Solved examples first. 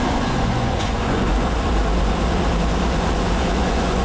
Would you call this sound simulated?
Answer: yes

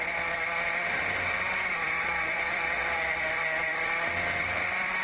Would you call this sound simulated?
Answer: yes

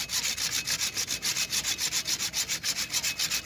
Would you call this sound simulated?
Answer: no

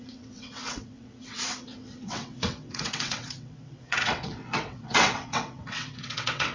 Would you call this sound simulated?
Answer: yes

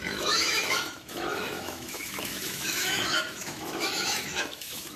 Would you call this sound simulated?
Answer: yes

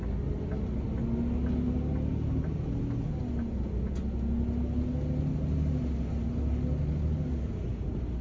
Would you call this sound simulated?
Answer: no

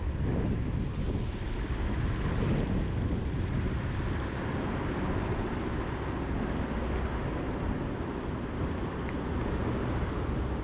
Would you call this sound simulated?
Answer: no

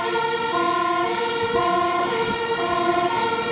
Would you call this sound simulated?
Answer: no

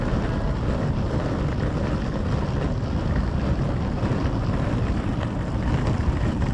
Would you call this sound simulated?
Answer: no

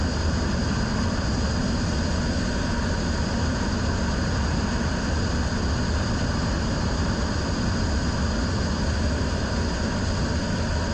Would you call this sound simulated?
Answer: no